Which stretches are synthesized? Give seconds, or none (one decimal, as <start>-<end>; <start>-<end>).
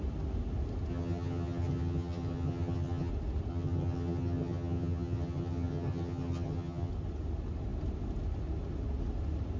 0.9-3.1; 3.5-6.9